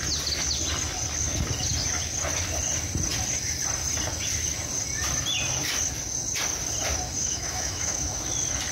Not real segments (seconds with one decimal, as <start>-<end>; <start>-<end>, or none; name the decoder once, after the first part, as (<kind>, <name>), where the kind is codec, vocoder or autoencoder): 7.2-8.2 (autoencoder, DAC-VAE)